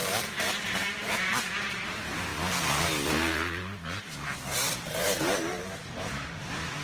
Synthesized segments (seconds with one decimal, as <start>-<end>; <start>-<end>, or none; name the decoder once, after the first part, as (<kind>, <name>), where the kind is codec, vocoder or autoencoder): 0.0-2.3 (vocoder, BigVGAN v2); 4.0-6.8